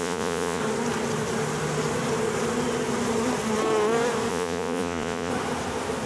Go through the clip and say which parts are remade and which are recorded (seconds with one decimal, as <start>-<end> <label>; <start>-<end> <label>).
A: 0.0-0.6 remade; 0.6-4.3 recorded; 4.3-5.3 remade; 5.3-6.1 recorded